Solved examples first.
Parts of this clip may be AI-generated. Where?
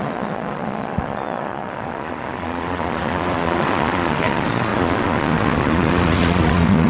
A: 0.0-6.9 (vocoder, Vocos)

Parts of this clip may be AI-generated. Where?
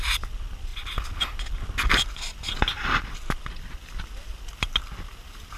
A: none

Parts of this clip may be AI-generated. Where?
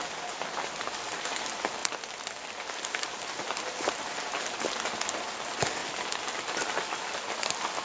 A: none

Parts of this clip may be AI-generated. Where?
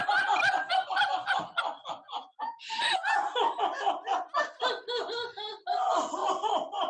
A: none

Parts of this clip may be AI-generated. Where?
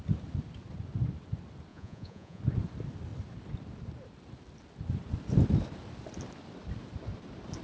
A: 1.7-2.4 (vocoder, Vocos)